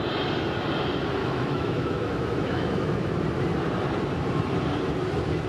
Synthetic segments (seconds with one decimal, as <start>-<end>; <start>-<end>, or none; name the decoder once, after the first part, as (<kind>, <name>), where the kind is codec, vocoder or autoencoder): 1.2-3.1 (autoencoder, DAC-VAE)